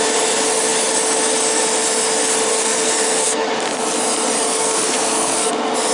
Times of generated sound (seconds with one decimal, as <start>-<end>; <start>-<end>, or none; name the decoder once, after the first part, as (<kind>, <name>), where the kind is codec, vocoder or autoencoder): 2.5-3.5 (codec, SNAC); 4.5-5.5